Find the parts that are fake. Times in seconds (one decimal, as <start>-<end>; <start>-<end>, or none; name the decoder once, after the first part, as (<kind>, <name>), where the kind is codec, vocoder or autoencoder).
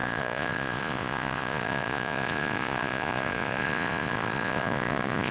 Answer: 0.0-5.3 (vocoder, Vocos)